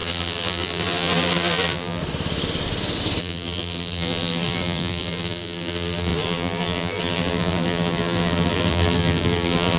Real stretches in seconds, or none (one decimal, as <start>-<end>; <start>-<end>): 2.0-3.2